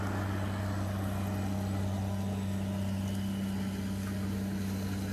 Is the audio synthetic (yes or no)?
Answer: no